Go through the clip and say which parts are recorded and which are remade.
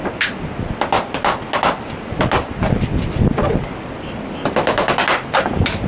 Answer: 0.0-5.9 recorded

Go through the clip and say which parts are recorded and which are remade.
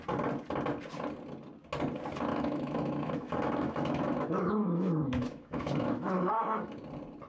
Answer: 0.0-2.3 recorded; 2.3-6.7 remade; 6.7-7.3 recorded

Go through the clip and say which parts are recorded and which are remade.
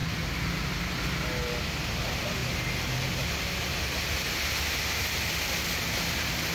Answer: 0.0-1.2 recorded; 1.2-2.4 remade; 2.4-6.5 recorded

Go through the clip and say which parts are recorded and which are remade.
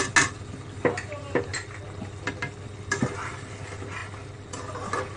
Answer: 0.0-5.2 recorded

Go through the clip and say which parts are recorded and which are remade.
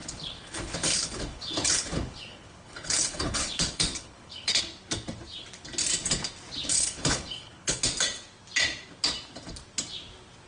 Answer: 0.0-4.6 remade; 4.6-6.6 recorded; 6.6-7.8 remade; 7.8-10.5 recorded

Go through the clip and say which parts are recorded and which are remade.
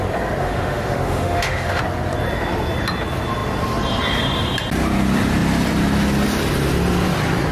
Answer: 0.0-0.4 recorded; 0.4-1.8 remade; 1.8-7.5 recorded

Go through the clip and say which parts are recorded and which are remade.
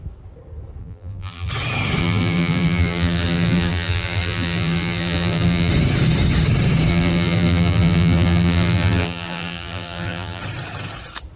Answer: 0.0-0.8 recorded; 0.8-1.5 remade; 1.5-2.0 recorded; 2.0-5.7 remade; 5.7-6.9 recorded; 6.9-10.4 remade; 10.4-11.4 recorded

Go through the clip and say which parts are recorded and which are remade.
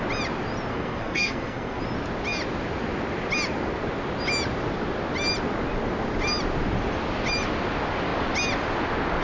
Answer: 0.0-0.7 recorded; 0.7-1.8 remade; 1.8-9.2 recorded